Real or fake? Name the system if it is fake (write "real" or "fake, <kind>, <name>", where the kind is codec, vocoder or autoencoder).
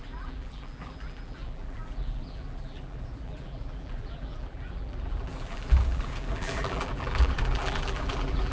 fake, vocoder, BigVGAN v2